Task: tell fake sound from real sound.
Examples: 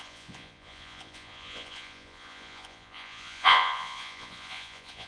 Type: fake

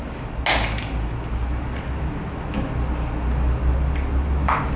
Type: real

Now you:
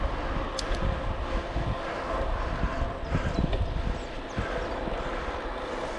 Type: real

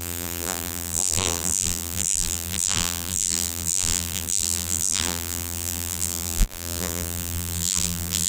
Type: fake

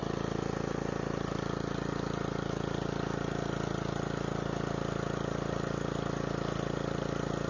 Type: real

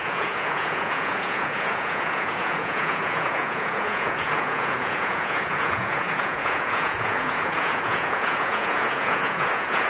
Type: fake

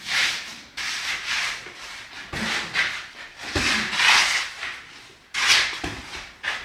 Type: real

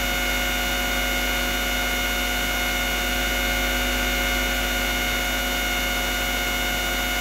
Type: real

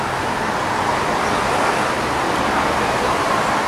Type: real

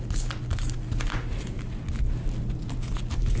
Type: real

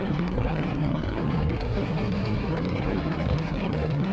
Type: fake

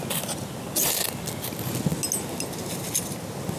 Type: real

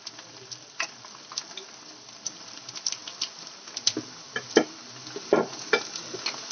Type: real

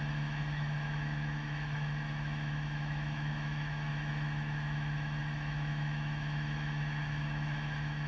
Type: fake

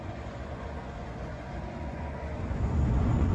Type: fake